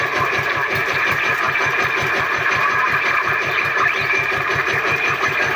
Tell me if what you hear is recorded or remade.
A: recorded